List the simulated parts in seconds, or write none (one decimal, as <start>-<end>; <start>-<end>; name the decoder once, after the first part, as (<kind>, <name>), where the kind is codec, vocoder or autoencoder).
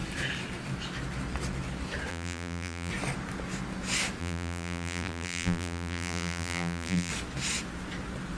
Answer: 2.1-2.9 (vocoder, BigVGAN v2); 4.2-7.1